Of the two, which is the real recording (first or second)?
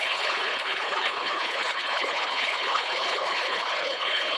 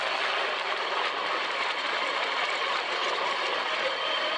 second